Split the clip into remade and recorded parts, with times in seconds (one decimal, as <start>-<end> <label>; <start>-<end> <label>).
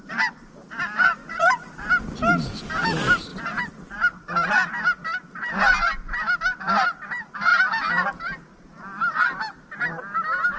0.0-1.2 recorded; 1.2-1.9 remade; 1.9-10.6 recorded